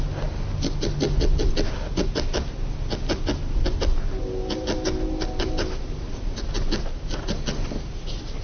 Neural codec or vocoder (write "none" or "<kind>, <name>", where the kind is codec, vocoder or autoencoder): none